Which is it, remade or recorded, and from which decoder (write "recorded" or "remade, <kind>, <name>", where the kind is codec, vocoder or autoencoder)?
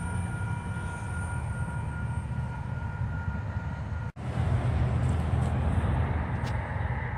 recorded